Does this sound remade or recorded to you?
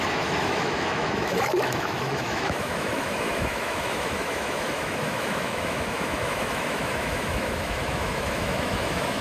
remade